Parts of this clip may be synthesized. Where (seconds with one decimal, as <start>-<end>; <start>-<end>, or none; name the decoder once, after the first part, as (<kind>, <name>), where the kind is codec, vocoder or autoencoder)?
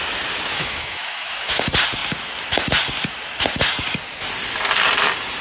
0.5-1.6 (autoencoder, DAC-VAE)